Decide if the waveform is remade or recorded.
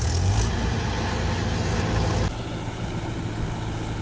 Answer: recorded